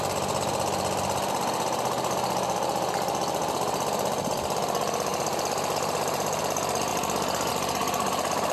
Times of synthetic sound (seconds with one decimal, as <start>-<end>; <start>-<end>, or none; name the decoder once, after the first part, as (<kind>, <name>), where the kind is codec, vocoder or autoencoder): 3.4-4.6 (vocoder, BigVGAN v2); 5.1-6.4